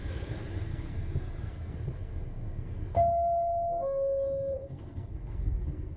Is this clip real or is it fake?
fake